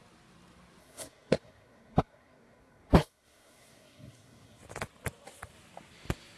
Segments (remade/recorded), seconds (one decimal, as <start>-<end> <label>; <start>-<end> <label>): 0.0-0.8 recorded; 0.8-4.6 remade; 4.6-6.4 recorded